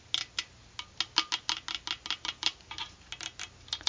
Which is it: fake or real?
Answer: real